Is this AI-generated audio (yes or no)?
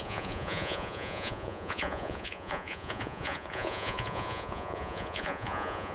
yes